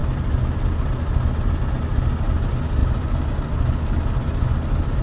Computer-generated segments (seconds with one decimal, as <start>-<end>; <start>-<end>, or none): 2.8-3.5